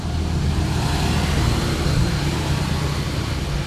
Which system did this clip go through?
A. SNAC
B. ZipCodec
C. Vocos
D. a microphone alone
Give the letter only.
D